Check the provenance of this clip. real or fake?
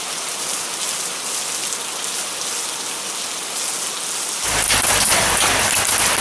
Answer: real